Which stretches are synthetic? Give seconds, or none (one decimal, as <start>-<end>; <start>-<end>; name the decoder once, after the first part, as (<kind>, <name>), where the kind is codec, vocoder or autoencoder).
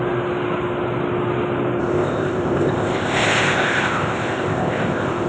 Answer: 1.8-5.3 (codec, ZipCodec)